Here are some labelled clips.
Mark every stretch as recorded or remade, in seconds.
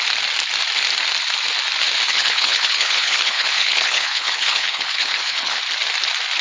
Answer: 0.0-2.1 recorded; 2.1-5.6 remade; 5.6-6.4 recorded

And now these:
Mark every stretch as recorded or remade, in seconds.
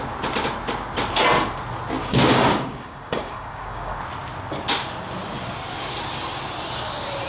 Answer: 0.0-2.0 recorded; 2.0-4.0 remade; 4.0-7.3 recorded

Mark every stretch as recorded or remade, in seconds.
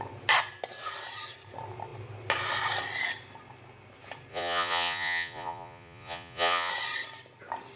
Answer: 0.0-4.3 recorded; 4.3-6.7 remade; 6.7-7.8 recorded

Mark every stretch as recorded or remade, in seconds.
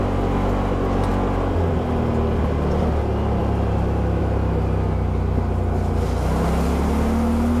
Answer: 0.0-7.6 recorded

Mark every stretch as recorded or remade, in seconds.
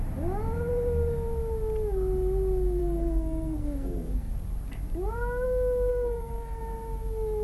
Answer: 0.0-2.8 recorded; 2.8-4.3 remade; 4.3-5.9 recorded; 5.9-6.6 remade; 6.6-7.4 recorded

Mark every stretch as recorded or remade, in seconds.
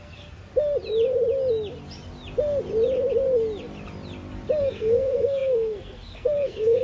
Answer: 0.0-0.5 remade; 0.5-4.6 recorded; 4.6-6.8 remade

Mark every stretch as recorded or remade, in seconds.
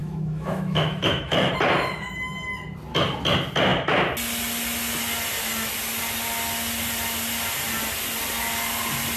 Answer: 0.0-1.5 remade; 1.5-9.2 recorded